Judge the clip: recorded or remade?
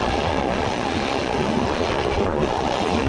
remade